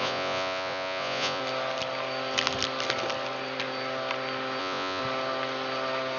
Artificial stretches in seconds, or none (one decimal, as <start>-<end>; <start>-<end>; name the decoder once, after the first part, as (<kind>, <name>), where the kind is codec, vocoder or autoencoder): 0.0-1.4 (vocoder, Vocos); 4.6-5.0